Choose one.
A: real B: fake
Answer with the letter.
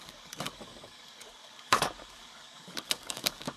B